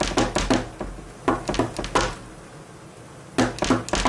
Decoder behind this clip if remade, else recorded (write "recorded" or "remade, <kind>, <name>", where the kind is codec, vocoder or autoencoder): recorded